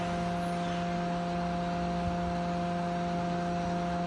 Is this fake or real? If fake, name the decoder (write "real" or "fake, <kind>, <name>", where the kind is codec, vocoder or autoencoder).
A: real